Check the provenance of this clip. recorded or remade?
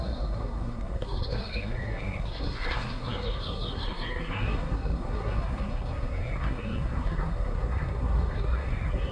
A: remade